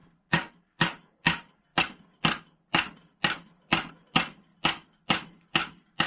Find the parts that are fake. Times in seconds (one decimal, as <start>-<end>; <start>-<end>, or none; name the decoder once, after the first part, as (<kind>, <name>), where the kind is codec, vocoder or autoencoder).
none